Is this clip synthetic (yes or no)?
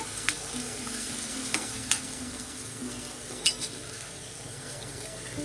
yes